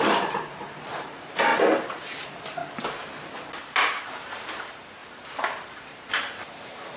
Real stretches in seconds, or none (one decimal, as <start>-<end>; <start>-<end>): 1.5-2.2; 2.6-4.4; 5.0-5.7

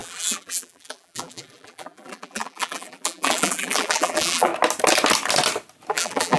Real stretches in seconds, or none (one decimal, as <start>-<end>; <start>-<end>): 4.5-5.9

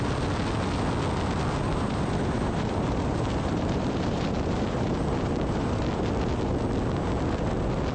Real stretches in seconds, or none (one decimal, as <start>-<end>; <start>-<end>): 0.0-1.7; 5.9-7.9

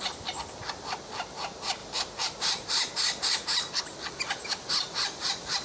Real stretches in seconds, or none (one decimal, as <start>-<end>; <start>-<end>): 0.0-1.8; 3.8-5.6

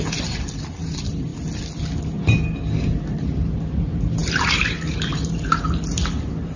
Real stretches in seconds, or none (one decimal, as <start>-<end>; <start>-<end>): 1.3-2.8

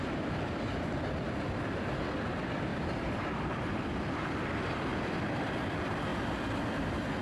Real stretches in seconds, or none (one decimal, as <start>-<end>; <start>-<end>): 6.1-7.2